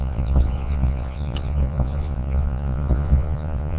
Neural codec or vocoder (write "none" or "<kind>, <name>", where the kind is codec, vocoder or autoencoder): vocoder, Vocos